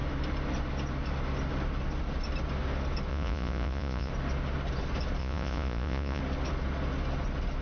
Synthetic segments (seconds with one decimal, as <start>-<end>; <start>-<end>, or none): 3.1-4.1; 5.2-6.2